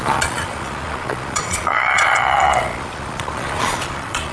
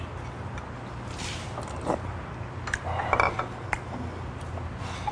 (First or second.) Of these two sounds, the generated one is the first